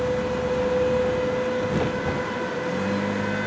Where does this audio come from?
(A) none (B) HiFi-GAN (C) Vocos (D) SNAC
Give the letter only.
A